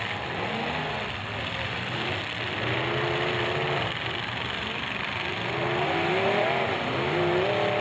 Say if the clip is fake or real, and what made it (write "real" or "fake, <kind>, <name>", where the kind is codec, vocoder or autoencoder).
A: real